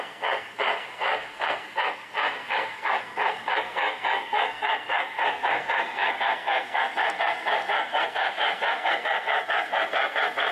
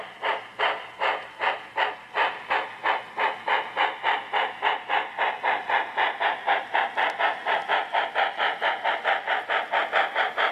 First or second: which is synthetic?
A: first